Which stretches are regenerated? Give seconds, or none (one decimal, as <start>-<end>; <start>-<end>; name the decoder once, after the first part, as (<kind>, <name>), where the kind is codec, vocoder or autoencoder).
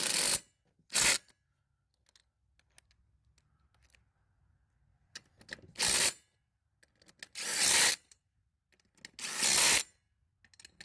4.9-6.7 (vocoder, BigVGAN v2); 7.9-9.0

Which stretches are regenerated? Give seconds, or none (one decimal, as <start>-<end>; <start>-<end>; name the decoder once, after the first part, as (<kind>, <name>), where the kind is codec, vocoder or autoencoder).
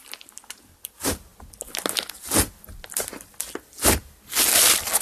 none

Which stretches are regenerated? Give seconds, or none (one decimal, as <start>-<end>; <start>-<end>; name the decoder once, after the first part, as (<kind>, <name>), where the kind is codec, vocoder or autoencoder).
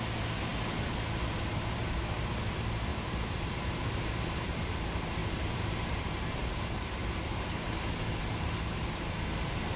2.9-3.9 (vocoder, BigVGAN v2); 5.2-7.7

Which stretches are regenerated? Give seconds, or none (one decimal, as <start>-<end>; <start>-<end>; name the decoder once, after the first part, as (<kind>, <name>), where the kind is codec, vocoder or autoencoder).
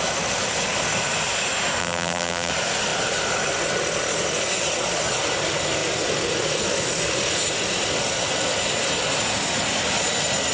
1.8-2.5 (vocoder, BigVGAN v2)